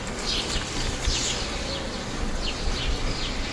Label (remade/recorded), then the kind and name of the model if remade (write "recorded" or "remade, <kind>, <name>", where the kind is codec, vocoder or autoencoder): recorded